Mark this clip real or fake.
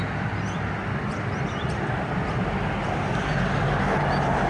real